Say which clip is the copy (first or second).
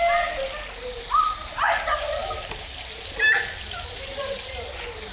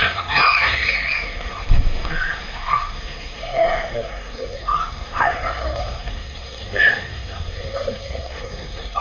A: second